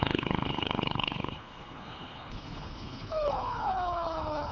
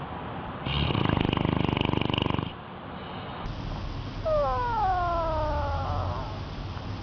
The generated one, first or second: first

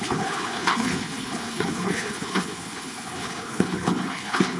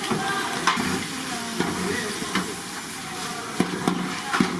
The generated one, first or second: first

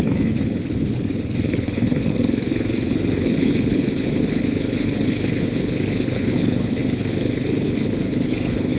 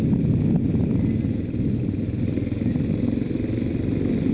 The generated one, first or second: first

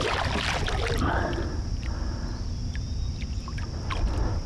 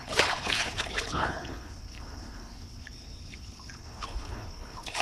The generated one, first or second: second